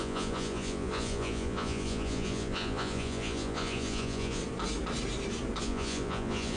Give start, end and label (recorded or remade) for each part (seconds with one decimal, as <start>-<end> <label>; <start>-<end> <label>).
0.0-4.4 remade; 4.4-5.6 recorded; 5.6-6.6 remade